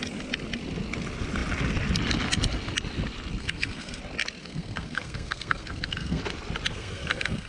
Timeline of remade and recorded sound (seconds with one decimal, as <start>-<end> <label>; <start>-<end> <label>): 0.0-3.4 recorded; 3.4-4.0 remade; 4.0-4.4 recorded; 4.4-6.2 remade; 6.2-6.7 recorded; 6.7-7.5 remade